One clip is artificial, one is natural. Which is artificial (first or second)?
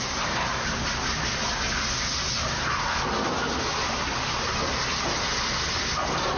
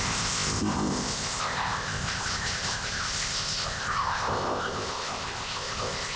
second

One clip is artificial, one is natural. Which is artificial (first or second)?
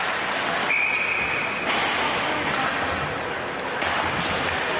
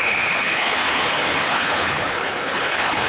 second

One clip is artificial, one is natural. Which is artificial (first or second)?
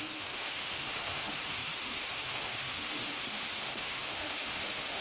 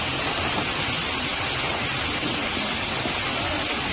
first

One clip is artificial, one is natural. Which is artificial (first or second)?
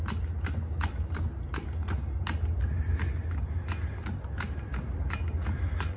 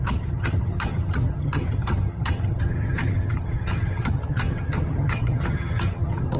second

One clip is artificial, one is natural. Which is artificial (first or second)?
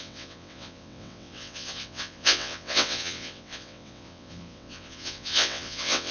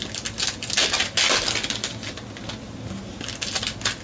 first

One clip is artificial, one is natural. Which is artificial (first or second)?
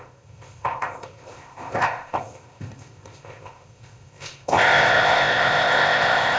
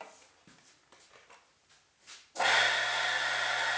first